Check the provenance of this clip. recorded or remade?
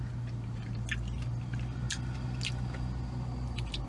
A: recorded